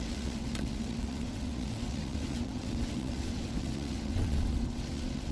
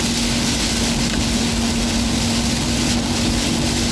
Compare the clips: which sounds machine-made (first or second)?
first